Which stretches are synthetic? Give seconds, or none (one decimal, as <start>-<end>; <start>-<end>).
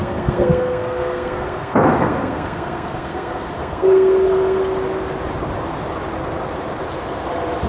0.0-4.6